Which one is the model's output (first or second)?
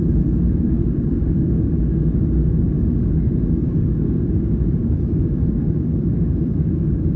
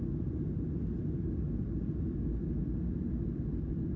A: first